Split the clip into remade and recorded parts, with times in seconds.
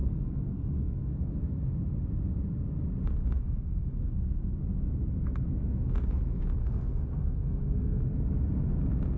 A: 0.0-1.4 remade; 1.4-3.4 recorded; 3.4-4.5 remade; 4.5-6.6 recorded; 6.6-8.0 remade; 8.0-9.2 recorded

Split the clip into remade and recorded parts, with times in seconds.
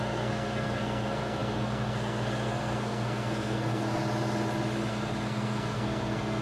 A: 0.0-4.0 remade; 4.0-4.9 recorded; 4.9-6.4 remade